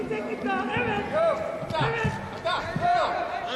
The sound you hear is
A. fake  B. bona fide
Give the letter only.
B